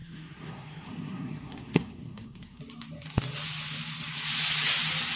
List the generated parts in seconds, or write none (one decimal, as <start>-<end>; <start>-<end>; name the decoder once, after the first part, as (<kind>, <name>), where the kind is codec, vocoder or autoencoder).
0.0-2.6 (codec, SNAC)